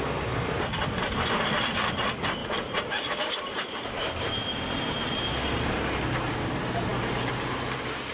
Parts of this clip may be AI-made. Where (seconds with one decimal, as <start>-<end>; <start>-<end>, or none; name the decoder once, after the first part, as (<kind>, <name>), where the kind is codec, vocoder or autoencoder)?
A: none